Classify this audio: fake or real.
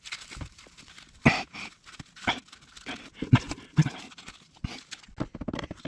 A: real